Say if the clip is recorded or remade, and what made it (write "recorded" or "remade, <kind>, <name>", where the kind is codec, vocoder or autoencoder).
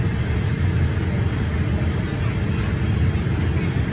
recorded